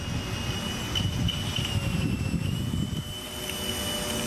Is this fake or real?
real